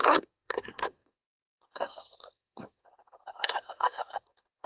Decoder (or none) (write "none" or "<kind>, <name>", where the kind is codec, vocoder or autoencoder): codec, SNAC